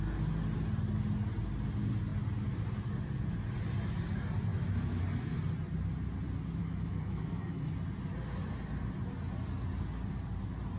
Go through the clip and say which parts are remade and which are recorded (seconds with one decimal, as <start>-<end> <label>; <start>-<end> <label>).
0.0-4.5 recorded; 4.5-5.0 remade; 5.0-6.6 recorded; 6.6-7.7 remade; 7.7-10.8 recorded